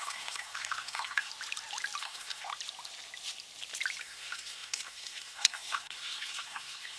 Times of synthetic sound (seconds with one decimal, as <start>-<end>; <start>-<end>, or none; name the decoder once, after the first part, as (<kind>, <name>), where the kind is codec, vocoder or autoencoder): 0.0-1.3 (codec, SNAC); 2.0-2.5; 4.0-7.0